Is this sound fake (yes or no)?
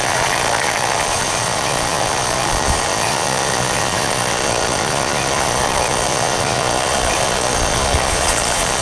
yes